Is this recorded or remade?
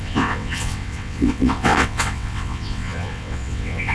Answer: remade